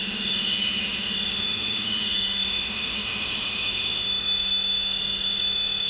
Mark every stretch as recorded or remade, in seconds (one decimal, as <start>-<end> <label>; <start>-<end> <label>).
0.0-5.9 remade

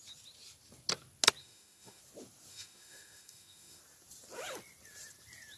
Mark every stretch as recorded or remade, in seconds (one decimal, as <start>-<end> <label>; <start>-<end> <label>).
0.0-1.4 recorded; 1.4-2.0 remade; 2.0-2.5 recorded; 2.5-3.8 remade; 3.8-5.6 recorded

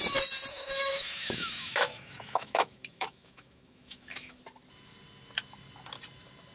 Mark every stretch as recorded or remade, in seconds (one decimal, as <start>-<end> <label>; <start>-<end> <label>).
0.0-0.5 recorded; 0.5-4.4 remade; 4.4-6.5 recorded

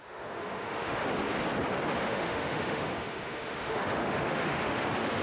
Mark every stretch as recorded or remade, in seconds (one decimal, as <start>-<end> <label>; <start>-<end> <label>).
0.0-1.0 remade; 1.0-1.9 recorded; 1.9-5.2 remade

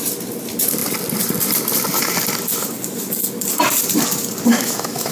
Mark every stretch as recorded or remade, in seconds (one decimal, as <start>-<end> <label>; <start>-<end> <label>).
0.0-4.5 recorded; 4.5-5.1 remade

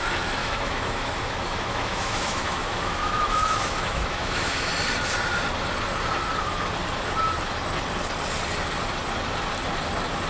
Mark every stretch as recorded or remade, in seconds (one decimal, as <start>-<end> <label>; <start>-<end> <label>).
0.0-0.4 recorded; 0.4-4.7 remade; 4.7-10.3 recorded

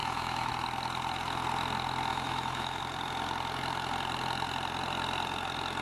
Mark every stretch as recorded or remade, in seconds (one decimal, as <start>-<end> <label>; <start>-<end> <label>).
0.0-0.5 remade; 0.5-2.1 recorded; 2.1-2.8 remade; 2.8-5.8 recorded

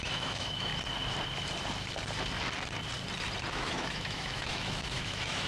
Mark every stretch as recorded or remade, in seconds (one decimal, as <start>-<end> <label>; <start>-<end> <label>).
0.0-0.7 remade; 0.7-3.5 recorded; 3.5-5.5 remade